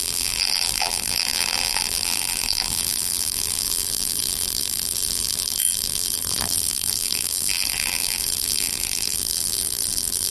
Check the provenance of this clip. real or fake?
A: fake